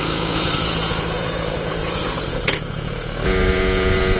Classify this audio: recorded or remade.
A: remade